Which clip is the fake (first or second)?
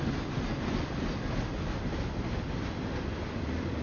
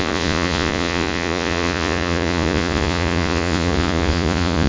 second